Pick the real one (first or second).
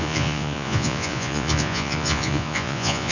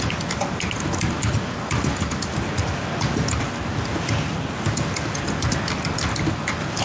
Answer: second